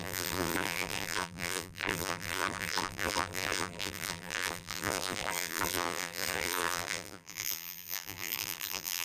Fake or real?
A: fake